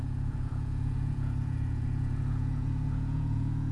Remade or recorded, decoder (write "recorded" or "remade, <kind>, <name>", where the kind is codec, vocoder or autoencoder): remade, vocoder, Vocos